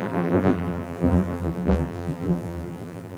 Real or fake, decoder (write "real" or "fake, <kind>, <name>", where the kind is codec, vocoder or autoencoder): fake, vocoder, BigVGAN v2